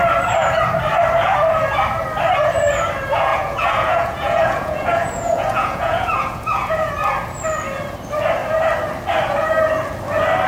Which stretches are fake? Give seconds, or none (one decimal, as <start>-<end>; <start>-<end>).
3.3-6.9